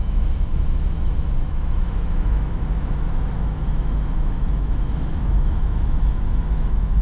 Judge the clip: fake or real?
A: fake